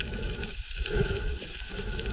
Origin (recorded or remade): remade